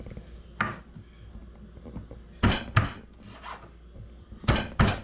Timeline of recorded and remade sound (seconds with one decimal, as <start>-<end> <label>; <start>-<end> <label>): 0.0-5.0 recorded